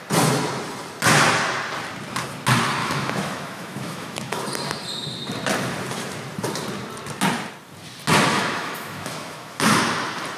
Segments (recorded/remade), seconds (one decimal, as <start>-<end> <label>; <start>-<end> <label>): 0.0-2.8 recorded; 2.8-4.4 remade; 4.4-8.3 recorded; 8.3-9.8 remade; 9.8-10.4 recorded